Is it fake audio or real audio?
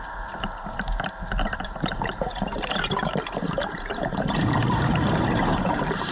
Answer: fake